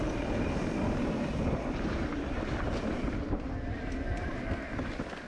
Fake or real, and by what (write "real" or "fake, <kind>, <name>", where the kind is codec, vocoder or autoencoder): fake, vocoder, BigVGAN v2